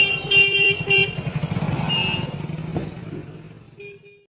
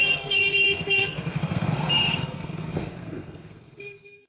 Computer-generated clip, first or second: second